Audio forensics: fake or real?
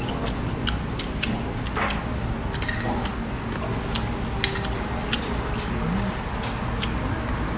real